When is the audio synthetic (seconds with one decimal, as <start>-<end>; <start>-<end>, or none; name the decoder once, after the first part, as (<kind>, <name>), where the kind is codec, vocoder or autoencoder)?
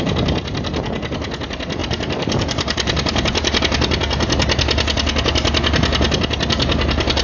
1.8-3.6 (vocoder, BigVGAN v2)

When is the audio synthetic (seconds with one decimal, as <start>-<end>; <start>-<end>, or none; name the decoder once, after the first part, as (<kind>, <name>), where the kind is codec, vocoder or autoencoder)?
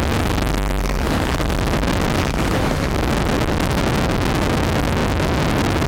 0.8-1.4 (autoencoder, DAC-VAE); 2.2-2.9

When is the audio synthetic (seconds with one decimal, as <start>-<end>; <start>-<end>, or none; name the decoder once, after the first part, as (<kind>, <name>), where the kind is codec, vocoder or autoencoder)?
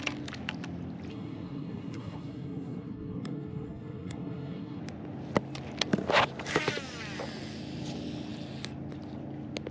1.1-4.8 (codec, SNAC)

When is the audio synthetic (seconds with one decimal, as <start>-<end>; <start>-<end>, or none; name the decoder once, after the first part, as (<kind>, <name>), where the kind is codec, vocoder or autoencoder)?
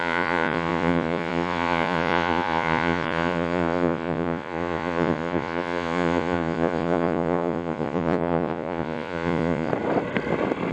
0.0-9.7 (vocoder, Vocos)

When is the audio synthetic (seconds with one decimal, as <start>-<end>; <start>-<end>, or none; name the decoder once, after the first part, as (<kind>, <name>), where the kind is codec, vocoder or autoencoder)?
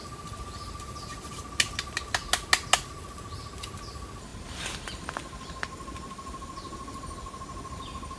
none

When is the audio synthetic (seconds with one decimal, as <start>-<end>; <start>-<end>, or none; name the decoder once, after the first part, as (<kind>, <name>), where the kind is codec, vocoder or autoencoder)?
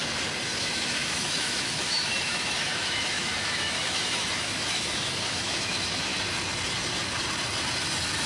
0.6-6.1 (autoencoder, DAC-VAE)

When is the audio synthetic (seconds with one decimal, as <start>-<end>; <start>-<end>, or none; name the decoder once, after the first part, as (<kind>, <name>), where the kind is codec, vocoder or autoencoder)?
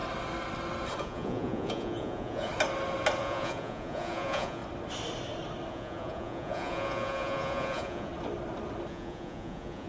1.0-2.5 (vocoder, Vocos); 3.2-4.6; 5.7-8.1; 8.9-9.9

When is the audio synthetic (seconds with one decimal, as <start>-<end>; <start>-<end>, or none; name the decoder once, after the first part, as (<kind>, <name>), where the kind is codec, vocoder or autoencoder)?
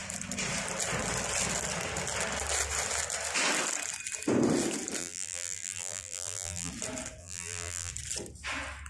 5.0-6.7 (vocoder, BigVGAN v2); 7.2-7.9